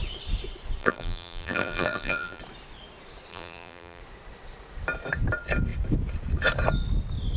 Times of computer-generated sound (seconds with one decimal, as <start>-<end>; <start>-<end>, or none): 0.8-2.4; 3.3-4.0